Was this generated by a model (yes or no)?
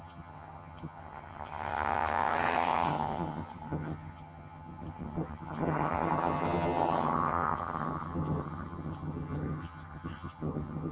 yes